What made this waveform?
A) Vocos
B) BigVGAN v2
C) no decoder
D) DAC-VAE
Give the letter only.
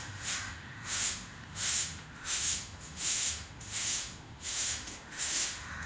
D